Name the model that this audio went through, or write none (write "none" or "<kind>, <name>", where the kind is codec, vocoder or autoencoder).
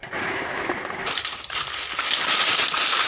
none